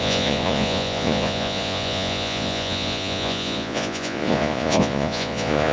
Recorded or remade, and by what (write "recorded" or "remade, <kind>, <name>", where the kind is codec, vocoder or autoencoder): remade, vocoder, Vocos